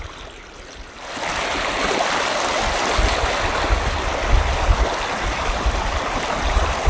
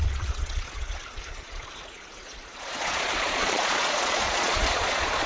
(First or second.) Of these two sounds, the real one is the first